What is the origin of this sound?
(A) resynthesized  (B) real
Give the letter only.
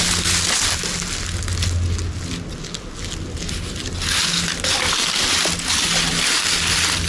B